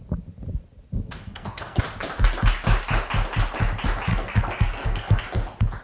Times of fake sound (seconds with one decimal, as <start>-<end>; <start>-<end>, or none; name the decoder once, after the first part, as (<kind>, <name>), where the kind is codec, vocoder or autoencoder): 1.2-1.8 (codec, SNAC); 4.1-5.2